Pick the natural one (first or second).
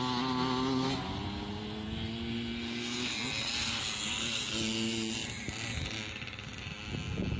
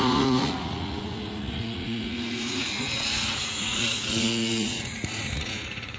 first